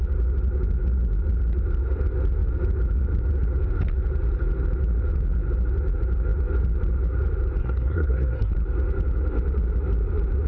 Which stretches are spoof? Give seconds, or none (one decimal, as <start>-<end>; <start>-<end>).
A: 7.6-8.5